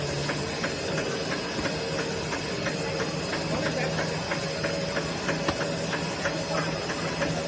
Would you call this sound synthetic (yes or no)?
no